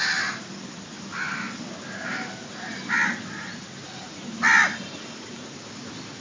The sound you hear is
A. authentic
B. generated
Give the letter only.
A